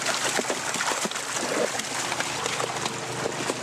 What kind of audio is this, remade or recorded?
recorded